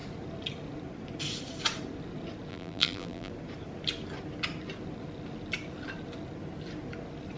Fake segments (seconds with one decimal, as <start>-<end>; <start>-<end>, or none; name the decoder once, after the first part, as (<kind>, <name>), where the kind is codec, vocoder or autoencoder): 2.5-3.3 (vocoder, BigVGAN v2)